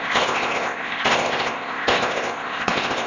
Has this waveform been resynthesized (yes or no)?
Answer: yes